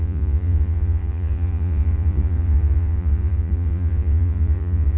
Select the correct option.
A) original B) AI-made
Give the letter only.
B